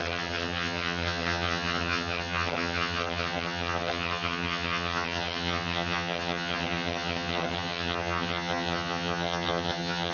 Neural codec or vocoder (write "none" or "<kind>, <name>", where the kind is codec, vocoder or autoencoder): vocoder, HiFi-GAN